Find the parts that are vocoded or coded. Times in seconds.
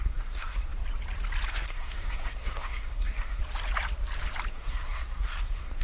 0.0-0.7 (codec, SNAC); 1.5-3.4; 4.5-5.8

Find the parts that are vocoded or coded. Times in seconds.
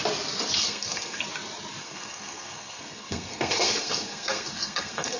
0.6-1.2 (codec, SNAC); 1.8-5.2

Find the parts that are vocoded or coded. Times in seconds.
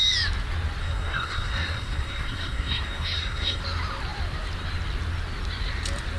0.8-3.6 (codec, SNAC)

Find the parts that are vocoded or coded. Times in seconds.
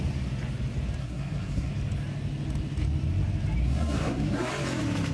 1.0-1.7 (codec, SNAC); 3.6-4.5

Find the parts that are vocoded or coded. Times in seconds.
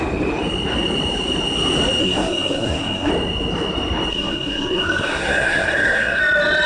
2.0-3.1 (codec, SNAC); 4.1-6.2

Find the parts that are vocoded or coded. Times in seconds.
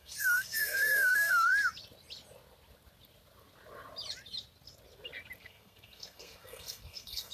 0.0-1.5 (codec, SNAC); 5.4-7.3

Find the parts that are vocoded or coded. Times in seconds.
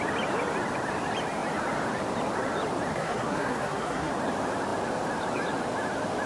2.9-4.1 (codec, SNAC)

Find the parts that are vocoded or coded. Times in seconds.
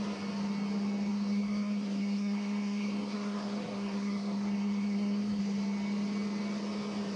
1.1-5.4 (codec, SNAC)